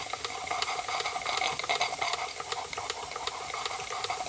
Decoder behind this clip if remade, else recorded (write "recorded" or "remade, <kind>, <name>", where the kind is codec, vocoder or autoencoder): recorded